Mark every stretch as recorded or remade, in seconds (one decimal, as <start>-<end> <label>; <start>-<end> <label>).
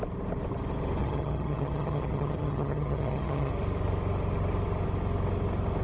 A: 0.0-1.0 recorded; 1.0-3.5 remade; 3.5-5.8 recorded